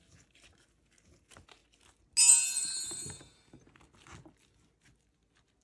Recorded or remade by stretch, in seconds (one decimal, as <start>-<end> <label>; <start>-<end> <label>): 0.0-5.6 recorded